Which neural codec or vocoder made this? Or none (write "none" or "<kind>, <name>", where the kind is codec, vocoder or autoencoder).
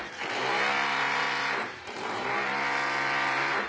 vocoder, BigVGAN v2